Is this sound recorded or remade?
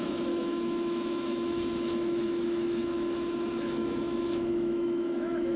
remade